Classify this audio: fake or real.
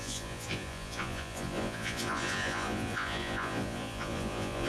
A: fake